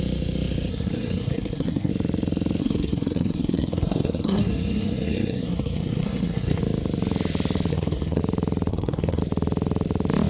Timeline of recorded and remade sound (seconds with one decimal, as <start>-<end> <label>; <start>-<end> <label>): 0.0-0.7 recorded; 0.7-1.9 remade; 1.9-2.6 recorded; 2.6-6.6 remade; 6.6-7.7 recorded; 7.7-8.2 remade; 8.2-8.7 recorded; 8.7-9.2 remade; 9.2-10.3 recorded